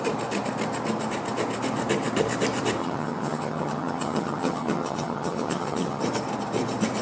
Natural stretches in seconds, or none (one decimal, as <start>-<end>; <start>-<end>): 0.0-2.8; 6.0-7.0